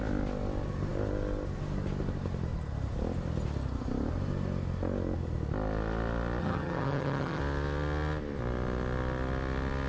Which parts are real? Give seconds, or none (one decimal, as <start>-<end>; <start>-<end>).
0.0-6.4; 7.4-9.9